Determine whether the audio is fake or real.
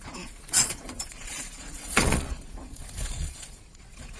fake